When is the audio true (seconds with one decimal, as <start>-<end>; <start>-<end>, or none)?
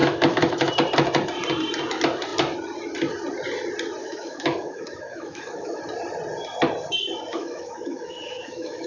0.7-4.0; 5.8-7.3